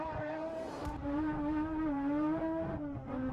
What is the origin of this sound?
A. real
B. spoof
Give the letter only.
B